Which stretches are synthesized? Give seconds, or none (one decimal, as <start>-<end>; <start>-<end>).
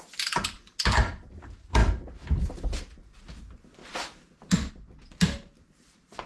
none